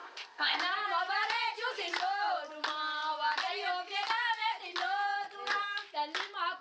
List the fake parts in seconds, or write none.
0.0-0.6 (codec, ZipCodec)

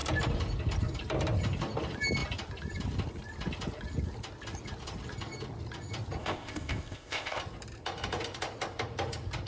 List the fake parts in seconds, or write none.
6.2-7.4 (codec, ZipCodec)

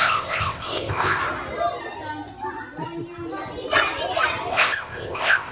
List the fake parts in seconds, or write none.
0.0-1.2 (codec, ZipCodec); 4.5-5.5

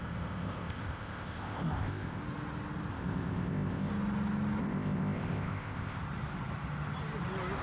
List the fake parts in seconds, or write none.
0.0-2.2 (codec, ZipCodec); 2.9-3.9; 4.6-6.0